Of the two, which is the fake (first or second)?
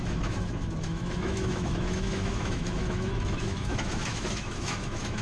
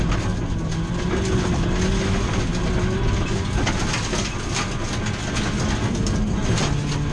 first